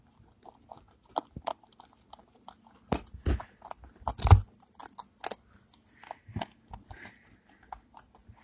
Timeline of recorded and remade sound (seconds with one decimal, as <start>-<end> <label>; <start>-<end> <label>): 0.0-8.4 recorded